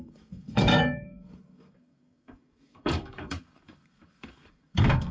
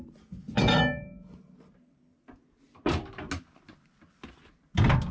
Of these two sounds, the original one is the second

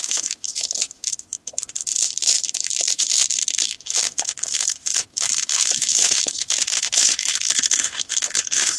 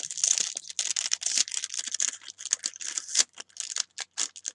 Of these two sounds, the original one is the second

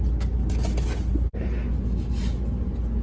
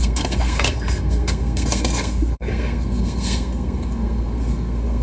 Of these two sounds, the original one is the first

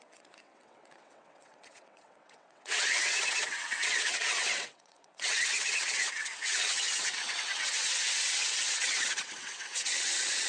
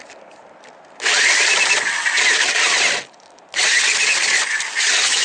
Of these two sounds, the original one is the second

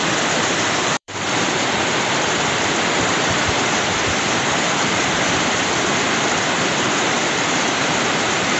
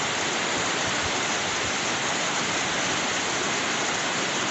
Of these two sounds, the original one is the second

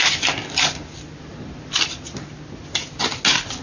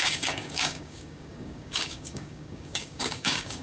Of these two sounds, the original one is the first